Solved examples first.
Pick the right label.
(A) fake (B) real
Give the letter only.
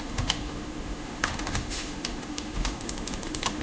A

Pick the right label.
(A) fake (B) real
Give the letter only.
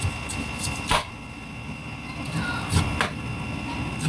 B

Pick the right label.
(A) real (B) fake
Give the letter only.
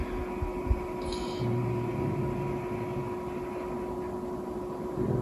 A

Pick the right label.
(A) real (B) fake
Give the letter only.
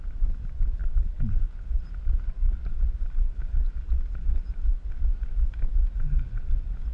A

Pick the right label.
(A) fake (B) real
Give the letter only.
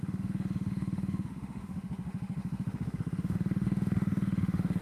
A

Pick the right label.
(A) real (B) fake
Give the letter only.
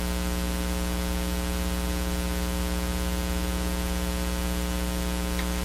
A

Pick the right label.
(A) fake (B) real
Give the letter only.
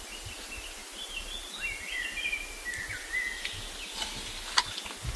B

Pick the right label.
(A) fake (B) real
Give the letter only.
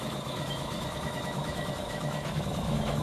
A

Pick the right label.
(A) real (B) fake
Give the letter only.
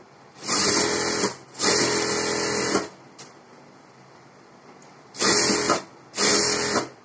A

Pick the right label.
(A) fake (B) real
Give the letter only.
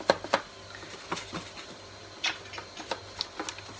B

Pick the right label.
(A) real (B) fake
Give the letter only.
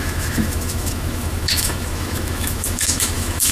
B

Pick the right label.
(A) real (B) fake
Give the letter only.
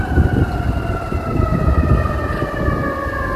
A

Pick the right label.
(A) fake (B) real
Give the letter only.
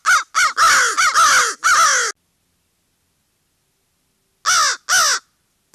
B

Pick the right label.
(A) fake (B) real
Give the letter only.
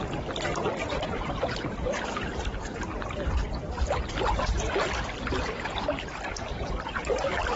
B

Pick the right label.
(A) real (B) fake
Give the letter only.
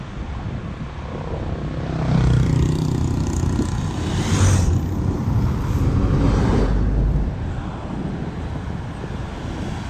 A